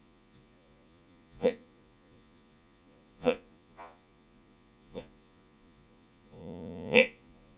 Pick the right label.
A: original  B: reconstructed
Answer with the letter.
B